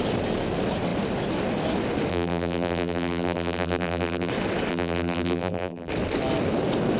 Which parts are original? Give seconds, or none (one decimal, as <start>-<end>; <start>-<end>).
0.0-2.1; 4.3-4.7; 5.9-7.0